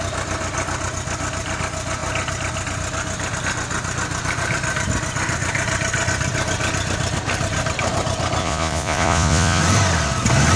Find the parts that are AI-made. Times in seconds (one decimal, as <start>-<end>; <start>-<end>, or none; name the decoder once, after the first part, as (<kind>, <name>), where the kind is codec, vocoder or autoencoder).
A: 8.4-9.6 (vocoder, Vocos)